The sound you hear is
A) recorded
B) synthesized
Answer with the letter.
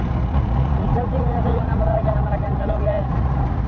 B